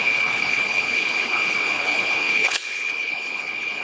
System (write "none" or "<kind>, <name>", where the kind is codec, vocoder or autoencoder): codec, HILCodec